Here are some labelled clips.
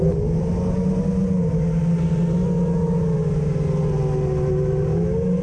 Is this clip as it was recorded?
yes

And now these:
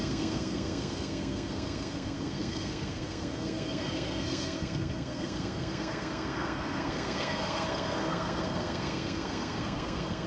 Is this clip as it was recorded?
no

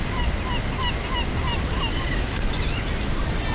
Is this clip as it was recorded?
yes